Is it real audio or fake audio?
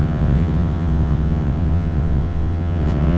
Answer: fake